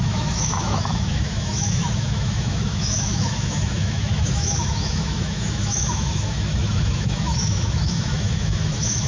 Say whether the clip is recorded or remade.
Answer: remade